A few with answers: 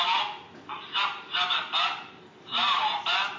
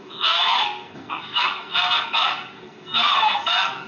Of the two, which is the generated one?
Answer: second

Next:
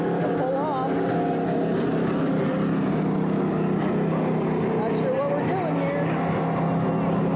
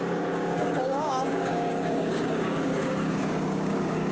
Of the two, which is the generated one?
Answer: second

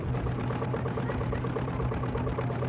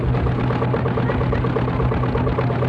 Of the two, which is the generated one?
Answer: first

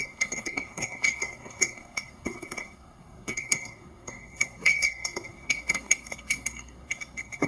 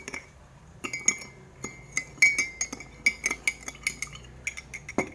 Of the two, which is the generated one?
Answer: first